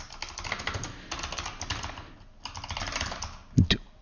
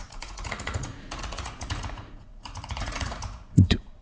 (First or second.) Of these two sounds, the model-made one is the second